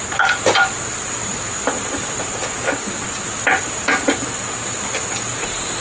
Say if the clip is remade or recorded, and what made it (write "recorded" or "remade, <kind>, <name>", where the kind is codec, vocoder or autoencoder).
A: recorded